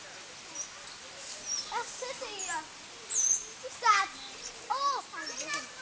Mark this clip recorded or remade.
recorded